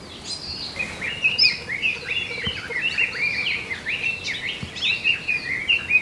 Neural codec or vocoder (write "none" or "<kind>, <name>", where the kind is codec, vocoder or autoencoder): none